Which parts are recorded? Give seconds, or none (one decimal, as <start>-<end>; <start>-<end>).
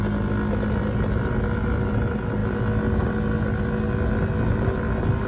0.0-5.3